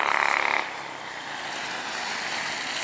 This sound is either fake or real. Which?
real